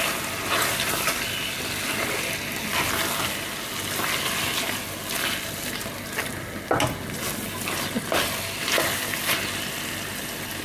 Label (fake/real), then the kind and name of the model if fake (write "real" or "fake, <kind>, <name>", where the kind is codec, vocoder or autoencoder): real